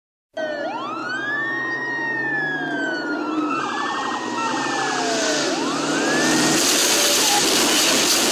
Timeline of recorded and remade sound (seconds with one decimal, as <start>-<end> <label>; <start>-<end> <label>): 0.0-1.0 recorded; 1.0-4.6 remade; 4.6-8.3 recorded